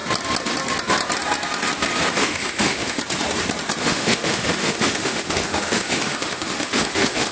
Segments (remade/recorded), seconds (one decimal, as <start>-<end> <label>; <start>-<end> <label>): 0.0-2.1 recorded; 2.1-3.0 remade; 3.0-3.8 recorded; 3.8-7.3 remade